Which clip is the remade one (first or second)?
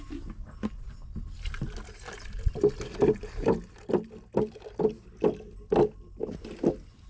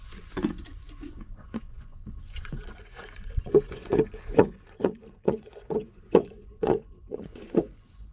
second